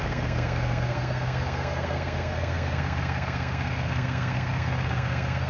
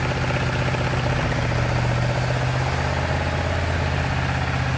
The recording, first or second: second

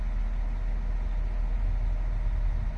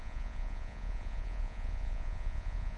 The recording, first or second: first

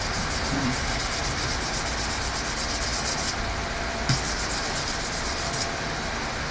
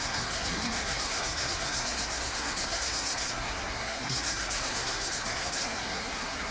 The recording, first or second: first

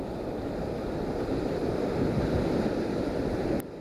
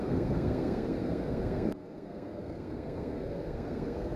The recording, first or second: first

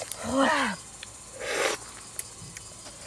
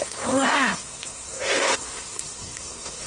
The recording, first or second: first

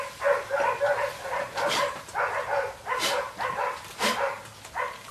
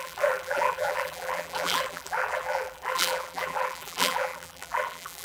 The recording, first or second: first